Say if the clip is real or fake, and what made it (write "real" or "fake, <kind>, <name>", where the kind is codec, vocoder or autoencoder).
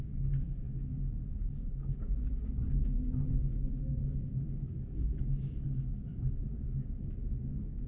fake, codec, DAC